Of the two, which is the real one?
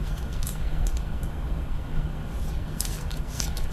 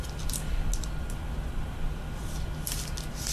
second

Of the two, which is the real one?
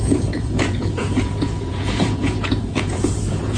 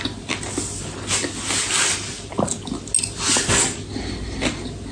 second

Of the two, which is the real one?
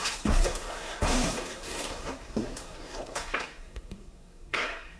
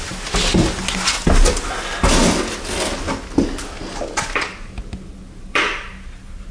second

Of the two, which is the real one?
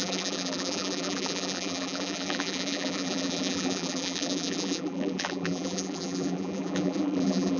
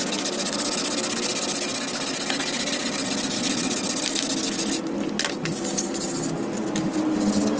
second